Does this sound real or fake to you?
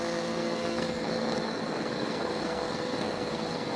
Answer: fake